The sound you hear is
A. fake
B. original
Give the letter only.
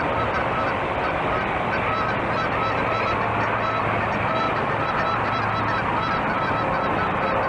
B